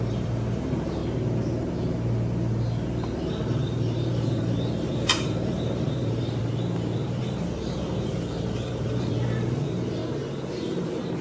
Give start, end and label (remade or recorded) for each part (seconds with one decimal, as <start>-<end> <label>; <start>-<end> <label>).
0.0-1.0 remade; 1.0-3.3 recorded; 3.3-6.4 remade; 6.4-7.2 recorded; 7.2-10.0 remade; 10.0-10.6 recorded; 10.6-11.2 remade